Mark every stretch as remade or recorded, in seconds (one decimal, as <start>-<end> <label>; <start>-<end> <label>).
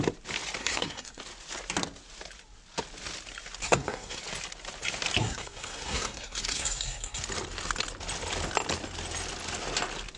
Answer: 0.0-0.6 recorded; 0.6-1.2 remade; 1.2-3.6 recorded; 3.6-4.2 remade; 4.2-5.2 recorded; 5.2-7.2 remade; 7.2-10.2 recorded